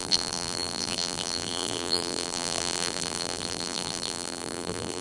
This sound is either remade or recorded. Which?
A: remade